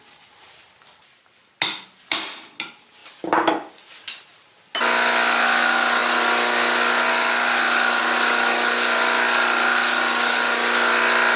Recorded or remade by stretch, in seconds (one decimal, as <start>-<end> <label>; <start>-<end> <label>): 0.0-11.4 recorded